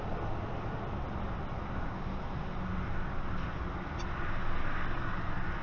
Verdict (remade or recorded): recorded